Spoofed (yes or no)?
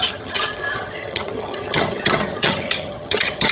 yes